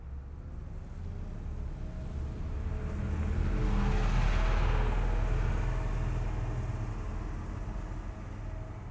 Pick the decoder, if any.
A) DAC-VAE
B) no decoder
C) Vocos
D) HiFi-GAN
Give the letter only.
B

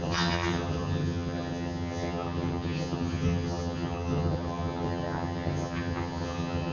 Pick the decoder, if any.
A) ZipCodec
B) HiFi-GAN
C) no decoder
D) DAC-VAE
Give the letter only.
B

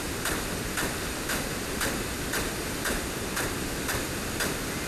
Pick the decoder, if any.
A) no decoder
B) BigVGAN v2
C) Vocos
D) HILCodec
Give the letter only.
A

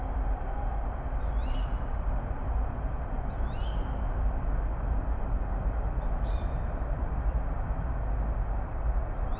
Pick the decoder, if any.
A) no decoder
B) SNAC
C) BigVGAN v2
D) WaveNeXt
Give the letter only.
A